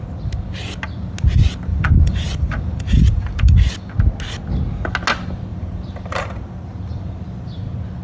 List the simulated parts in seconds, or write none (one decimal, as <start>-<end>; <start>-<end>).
1.7-3.7; 5.5-7.6